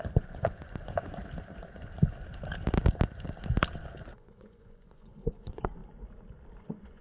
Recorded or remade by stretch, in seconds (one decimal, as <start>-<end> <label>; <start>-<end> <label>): 0.0-1.2 remade; 1.2-4.1 recorded; 4.1-5.8 remade; 5.8-6.6 recorded; 6.6-7.0 remade